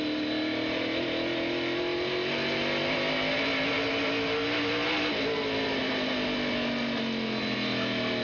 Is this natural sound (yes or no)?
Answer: yes